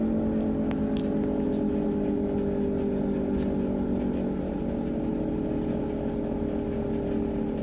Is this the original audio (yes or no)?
yes